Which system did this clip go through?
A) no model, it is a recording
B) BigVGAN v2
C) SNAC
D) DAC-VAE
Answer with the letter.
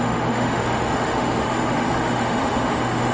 D